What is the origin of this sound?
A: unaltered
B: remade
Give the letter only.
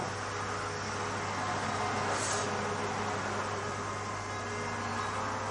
A